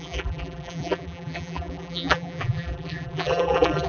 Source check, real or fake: fake